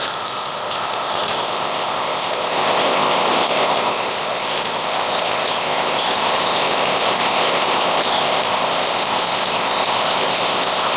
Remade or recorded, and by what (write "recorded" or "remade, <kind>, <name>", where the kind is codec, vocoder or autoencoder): remade, codec, ZipCodec